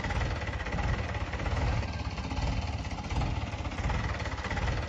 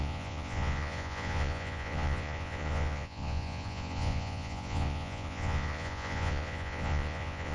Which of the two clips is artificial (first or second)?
second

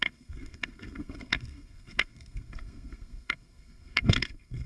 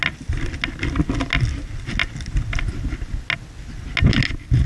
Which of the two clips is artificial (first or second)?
first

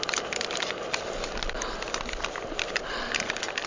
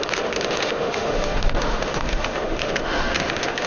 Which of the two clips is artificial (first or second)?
second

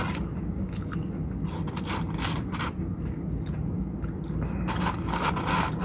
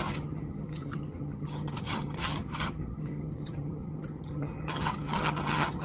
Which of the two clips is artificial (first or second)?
second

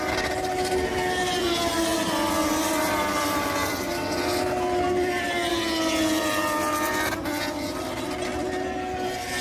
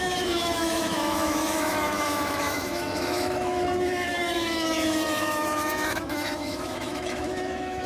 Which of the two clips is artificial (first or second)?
second